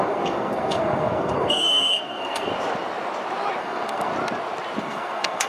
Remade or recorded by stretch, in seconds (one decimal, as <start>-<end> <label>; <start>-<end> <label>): 0.0-2.5 remade; 2.5-3.6 recorded; 3.6-4.1 remade; 4.1-4.8 recorded; 4.8-5.5 remade